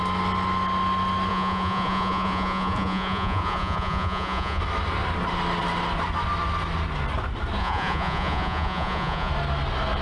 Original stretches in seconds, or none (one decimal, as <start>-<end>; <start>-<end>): 0.0-1.3; 4.6-7.6; 9.3-10.0